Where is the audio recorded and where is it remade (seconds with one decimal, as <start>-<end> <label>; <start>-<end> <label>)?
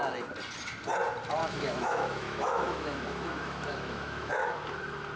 0.0-1.4 recorded; 1.4-4.5 remade; 4.5-5.2 recorded